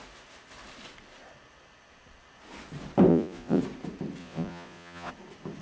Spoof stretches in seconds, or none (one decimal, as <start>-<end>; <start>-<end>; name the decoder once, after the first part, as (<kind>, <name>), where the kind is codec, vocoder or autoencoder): 3.1-3.6 (vocoder, Vocos); 4.2-5.1